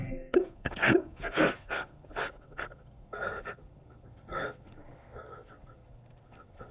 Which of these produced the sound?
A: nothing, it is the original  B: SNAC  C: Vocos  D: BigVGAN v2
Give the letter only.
B